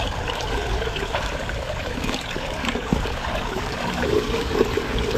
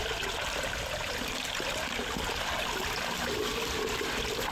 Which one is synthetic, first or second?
first